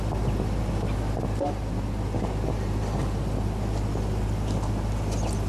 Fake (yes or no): no